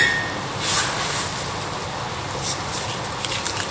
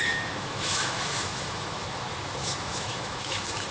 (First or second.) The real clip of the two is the first